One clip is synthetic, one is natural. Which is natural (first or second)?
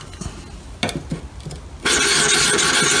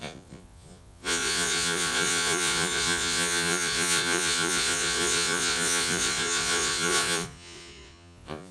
first